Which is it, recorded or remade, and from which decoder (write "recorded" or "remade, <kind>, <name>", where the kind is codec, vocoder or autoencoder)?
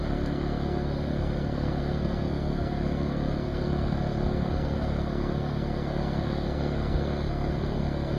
remade, codec, SNAC